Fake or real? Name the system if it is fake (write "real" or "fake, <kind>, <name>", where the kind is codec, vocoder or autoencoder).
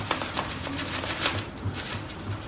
real